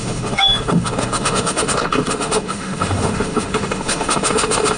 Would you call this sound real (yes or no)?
no